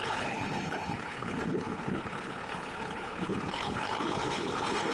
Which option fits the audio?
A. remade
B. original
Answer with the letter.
A